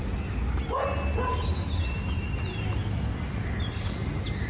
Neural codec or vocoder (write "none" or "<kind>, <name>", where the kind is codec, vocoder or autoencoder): none